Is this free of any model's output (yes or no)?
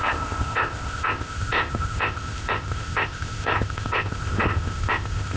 no